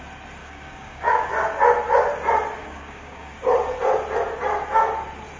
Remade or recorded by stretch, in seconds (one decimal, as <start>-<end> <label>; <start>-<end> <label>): 0.0-0.4 recorded; 0.4-1.3 remade; 1.3-2.6 recorded; 2.6-3.3 remade; 3.3-5.4 recorded